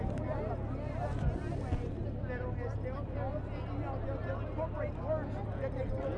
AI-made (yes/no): no